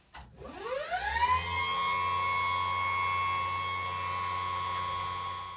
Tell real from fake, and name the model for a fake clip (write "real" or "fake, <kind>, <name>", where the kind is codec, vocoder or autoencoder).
real